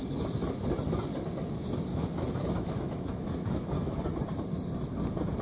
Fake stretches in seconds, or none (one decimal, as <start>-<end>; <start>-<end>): 1.9-3.9